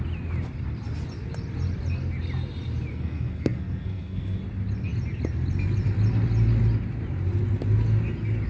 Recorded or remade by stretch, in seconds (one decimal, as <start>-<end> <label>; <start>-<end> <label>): 0.0-2.9 recorded; 2.9-4.4 remade; 4.4-8.5 recorded